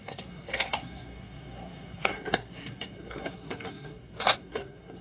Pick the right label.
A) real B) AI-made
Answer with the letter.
B